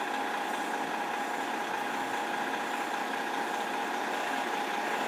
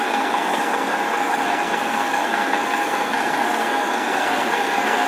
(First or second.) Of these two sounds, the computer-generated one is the second